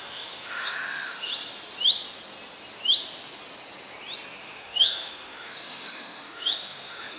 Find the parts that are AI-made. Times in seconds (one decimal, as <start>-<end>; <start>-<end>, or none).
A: 0.0-1.3; 4.4-7.2